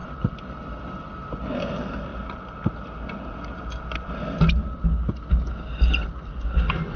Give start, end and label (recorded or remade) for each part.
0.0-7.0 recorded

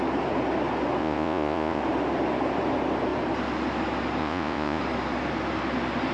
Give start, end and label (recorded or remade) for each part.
0.0-1.0 recorded; 1.0-1.8 remade; 1.8-4.2 recorded; 4.2-4.8 remade; 4.8-6.1 recorded

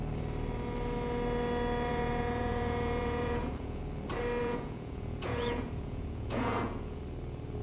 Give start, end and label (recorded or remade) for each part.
0.0-1.9 recorded; 1.9-3.8 remade; 3.8-4.4 recorded; 4.4-7.0 remade; 7.0-7.6 recorded